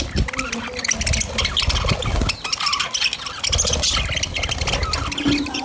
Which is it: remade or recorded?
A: recorded